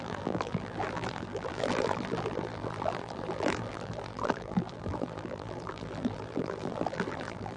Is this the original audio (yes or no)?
no